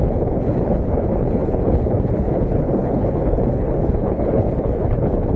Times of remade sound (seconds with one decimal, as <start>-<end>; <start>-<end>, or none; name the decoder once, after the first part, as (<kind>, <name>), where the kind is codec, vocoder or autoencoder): 0.0-5.4 (codec, HILCodec)